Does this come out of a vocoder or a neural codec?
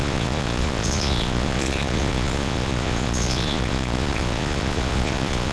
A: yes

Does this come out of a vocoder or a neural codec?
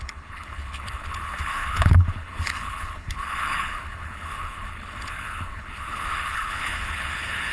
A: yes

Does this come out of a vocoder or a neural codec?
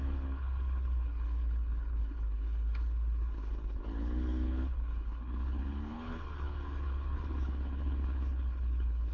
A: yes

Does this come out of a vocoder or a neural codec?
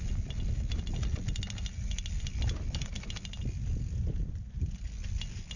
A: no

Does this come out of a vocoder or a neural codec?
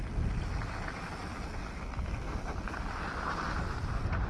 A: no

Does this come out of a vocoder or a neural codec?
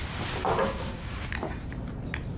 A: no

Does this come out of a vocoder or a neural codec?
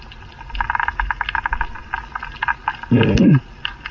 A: no